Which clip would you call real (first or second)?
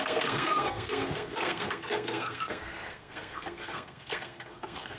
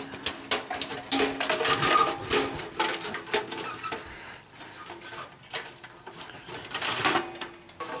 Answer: second